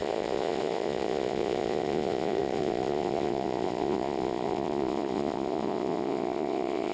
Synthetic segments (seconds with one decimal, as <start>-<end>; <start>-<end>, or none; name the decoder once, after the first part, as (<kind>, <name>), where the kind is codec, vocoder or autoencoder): 0.0-6.9 (vocoder, Vocos)